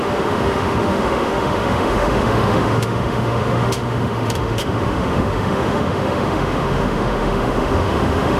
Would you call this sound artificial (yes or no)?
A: yes